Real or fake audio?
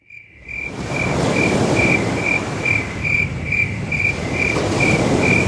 real